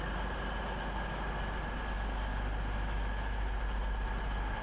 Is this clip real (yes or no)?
yes